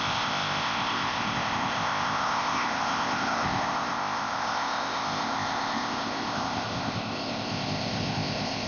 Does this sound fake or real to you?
fake